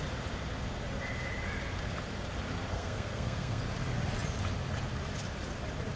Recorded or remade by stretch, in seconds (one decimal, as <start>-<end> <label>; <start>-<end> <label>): 0.0-2.7 recorded; 2.7-3.6 remade; 3.6-6.0 recorded